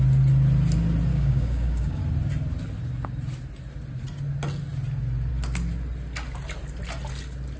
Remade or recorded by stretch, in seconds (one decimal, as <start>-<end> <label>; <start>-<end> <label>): 0.0-1.1 recorded; 1.1-2.0 remade; 2.0-7.6 recorded